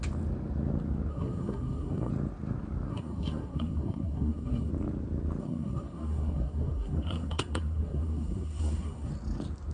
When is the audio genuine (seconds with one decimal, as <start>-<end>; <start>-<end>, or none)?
0.0-1.1; 2.1-2.9; 4.7-5.4; 9.1-9.7

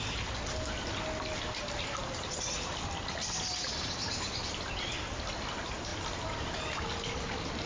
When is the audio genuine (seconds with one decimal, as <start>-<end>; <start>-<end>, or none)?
0.0-7.7

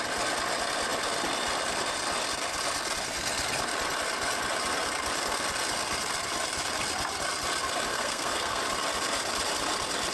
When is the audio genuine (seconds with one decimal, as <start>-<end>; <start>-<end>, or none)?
0.0-7.9; 8.6-10.1

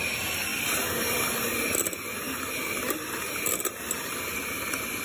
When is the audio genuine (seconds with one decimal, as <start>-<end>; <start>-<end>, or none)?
0.0-5.0

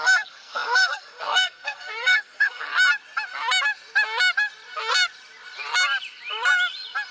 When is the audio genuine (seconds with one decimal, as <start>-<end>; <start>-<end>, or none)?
2.7-7.1

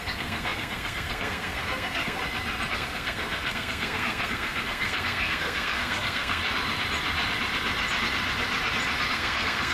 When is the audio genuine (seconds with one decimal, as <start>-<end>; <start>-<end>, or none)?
2.2-2.7; 6.4-9.1